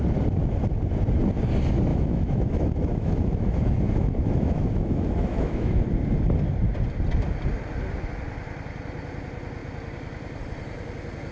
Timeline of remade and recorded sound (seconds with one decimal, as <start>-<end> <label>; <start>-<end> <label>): 0.0-1.9 recorded; 1.9-5.8 remade; 5.8-11.3 recorded